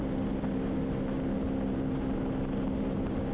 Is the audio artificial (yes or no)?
no